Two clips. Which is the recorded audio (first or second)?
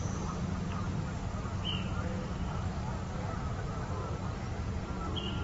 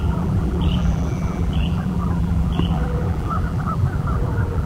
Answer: first